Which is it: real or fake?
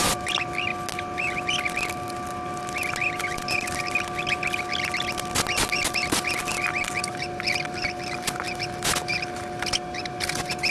real